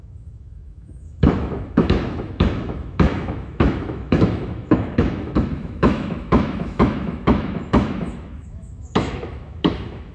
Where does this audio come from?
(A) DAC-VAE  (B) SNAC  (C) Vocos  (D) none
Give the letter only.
A